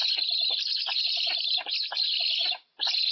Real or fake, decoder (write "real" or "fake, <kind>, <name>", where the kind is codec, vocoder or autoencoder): real